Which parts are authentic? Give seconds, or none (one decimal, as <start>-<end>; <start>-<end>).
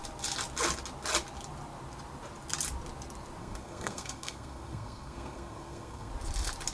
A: 0.0-3.4; 6.1-6.7